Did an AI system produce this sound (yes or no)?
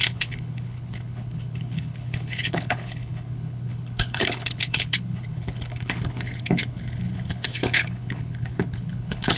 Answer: yes